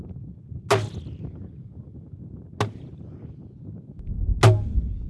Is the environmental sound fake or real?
real